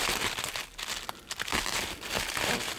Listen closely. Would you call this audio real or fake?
real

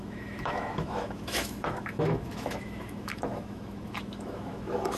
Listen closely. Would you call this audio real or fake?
fake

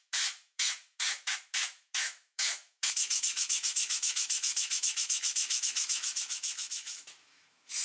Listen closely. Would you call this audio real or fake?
fake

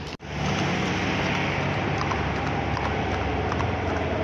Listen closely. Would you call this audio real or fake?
real